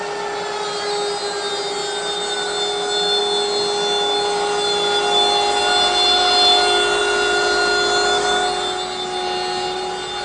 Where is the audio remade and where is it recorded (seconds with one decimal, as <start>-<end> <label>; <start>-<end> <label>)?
0.0-10.2 recorded